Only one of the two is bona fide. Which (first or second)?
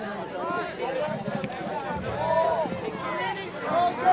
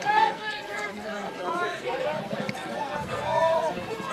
first